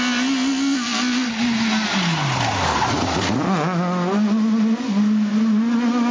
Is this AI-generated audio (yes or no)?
no